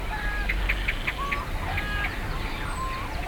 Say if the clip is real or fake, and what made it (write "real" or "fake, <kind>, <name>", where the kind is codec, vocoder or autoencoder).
real